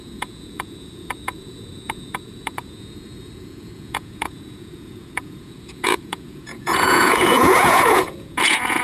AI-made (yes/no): yes